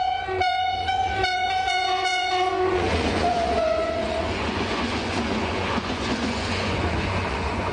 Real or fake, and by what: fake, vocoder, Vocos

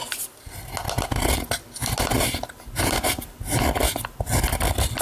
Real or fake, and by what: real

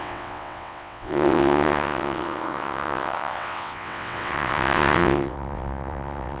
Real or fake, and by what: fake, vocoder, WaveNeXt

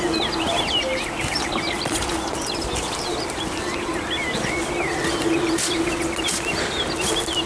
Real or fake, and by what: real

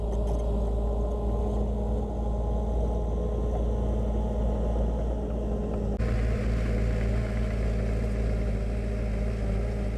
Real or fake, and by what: real